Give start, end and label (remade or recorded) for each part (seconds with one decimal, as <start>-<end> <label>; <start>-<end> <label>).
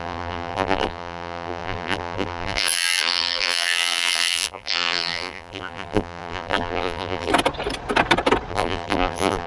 0.0-7.3 remade; 7.3-8.5 recorded; 8.5-9.5 remade